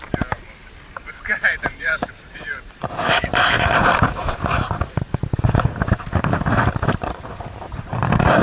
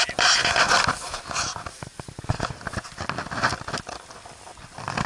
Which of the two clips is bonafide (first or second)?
second